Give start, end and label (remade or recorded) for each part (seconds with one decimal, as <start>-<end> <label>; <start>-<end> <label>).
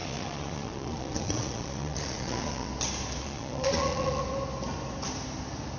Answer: 0.0-2.7 remade; 2.7-3.2 recorded; 3.2-4.2 remade; 4.2-5.8 recorded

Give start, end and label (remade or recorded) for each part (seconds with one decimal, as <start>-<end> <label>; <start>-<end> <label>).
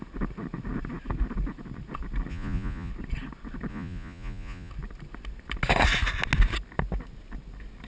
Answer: 0.0-2.3 recorded; 2.3-2.9 remade; 2.9-3.7 recorded; 3.7-4.7 remade; 4.7-7.9 recorded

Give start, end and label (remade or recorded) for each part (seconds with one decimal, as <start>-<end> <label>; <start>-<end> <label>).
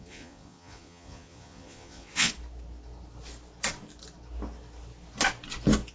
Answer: 0.0-2.3 remade; 2.3-5.9 recorded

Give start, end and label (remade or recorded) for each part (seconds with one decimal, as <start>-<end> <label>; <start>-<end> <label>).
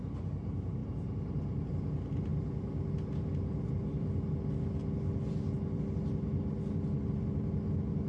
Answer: 0.0-8.1 recorded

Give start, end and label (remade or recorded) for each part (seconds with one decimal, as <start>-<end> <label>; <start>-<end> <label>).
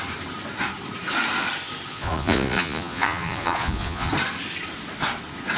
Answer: 0.0-1.9 recorded; 1.9-4.1 remade; 4.1-5.6 recorded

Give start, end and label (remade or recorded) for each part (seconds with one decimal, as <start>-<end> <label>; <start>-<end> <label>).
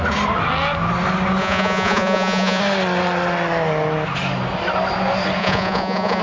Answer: 0.0-1.4 recorded; 1.4-2.6 remade; 2.6-5.4 recorded; 5.4-6.2 remade